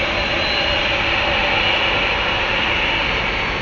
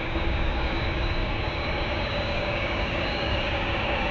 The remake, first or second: second